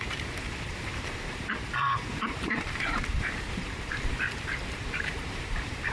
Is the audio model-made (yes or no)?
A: yes